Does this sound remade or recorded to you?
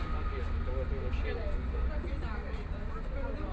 recorded